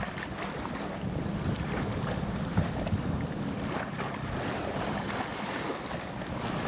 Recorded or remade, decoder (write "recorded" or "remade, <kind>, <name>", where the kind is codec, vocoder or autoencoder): recorded